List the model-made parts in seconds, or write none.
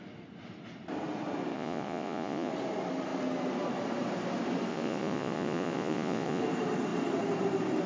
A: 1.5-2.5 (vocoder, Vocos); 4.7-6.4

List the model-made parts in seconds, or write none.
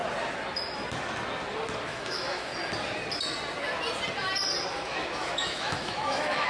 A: 1.8-2.5 (autoencoder, DAC-VAE); 4.7-6.5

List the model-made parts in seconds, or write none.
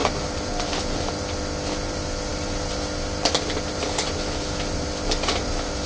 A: none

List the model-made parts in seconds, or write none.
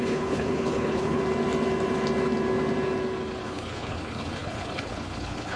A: 0.0-1.2 (codec, HILCodec); 3.4-5.6